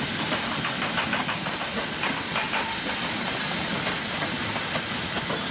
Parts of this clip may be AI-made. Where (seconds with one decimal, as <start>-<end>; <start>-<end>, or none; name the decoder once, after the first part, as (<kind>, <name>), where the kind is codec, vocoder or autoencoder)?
none